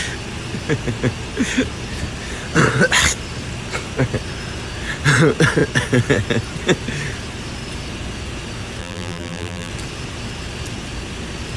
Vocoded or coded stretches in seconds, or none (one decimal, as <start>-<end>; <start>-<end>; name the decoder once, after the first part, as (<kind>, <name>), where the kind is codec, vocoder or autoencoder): 8.8-9.7 (vocoder, BigVGAN v2)